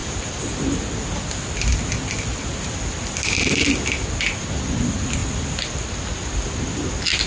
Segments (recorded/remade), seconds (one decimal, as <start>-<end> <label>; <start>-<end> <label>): 0.0-7.3 recorded